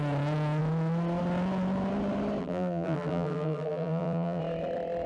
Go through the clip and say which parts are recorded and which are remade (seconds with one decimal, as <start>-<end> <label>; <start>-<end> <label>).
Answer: 0.0-2.4 recorded; 2.4-4.4 remade; 4.4-5.1 recorded